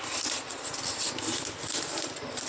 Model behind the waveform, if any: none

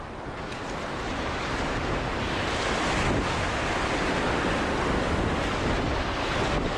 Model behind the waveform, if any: none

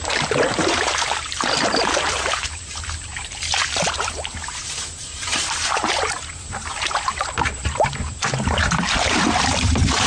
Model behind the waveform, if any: vocoder, BigVGAN v2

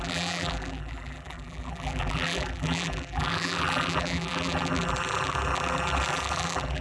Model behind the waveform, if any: vocoder, BigVGAN v2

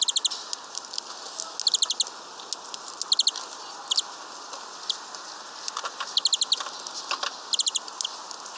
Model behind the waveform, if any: none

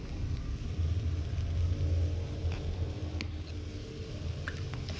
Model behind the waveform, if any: none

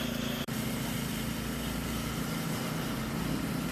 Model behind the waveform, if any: vocoder, BigVGAN v2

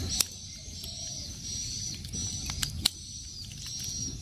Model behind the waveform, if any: none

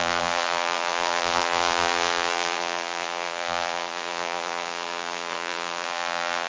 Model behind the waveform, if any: vocoder, BigVGAN v2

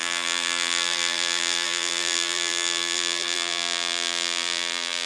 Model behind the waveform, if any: vocoder, BigVGAN v2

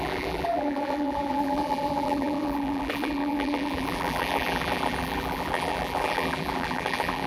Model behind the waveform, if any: vocoder, BigVGAN v2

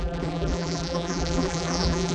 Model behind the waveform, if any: vocoder, BigVGAN v2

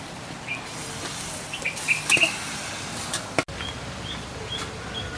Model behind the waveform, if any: none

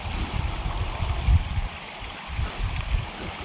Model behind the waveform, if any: none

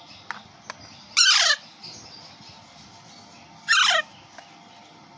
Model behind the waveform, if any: none